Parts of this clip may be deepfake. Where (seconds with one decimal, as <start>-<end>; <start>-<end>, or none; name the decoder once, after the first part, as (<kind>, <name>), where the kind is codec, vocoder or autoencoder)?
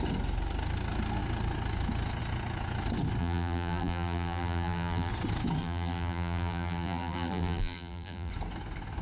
3.2-5.1 (vocoder, BigVGAN v2); 5.6-8.3